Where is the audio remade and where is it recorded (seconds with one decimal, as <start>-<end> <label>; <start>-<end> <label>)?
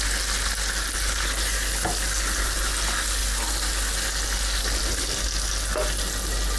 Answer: 0.0-6.6 recorded